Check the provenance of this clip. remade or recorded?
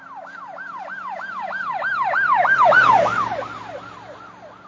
recorded